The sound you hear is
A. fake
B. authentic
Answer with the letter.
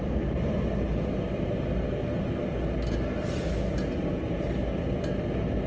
B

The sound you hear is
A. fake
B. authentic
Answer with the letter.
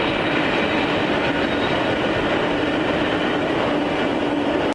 B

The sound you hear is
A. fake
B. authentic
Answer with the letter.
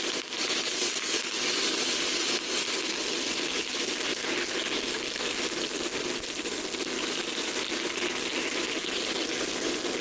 B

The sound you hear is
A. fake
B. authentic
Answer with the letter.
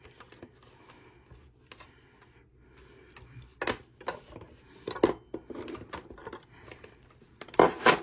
B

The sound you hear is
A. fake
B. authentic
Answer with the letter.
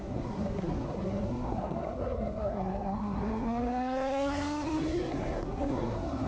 A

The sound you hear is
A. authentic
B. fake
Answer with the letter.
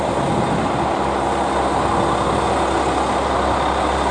A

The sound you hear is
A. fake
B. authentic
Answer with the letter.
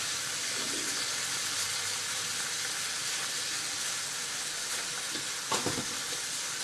B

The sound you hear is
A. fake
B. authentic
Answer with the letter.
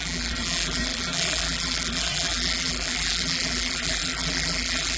A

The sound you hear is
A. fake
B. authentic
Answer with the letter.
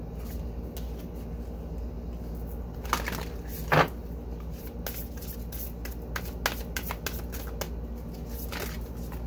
B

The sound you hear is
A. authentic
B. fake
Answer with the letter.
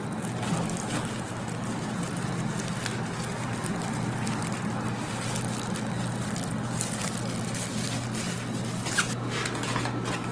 A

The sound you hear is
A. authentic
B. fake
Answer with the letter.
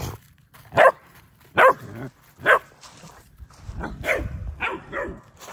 B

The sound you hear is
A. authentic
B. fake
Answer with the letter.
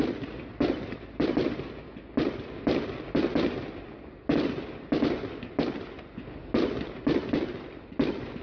A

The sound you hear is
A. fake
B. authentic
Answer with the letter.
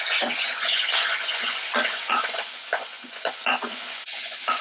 A